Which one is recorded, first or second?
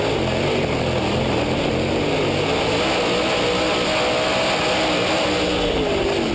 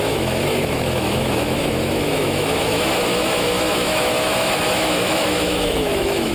first